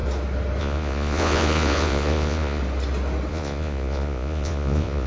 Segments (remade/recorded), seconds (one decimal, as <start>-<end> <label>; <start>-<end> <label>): 0.0-0.6 recorded; 0.6-2.6 remade; 2.6-3.3 recorded; 3.3-5.1 remade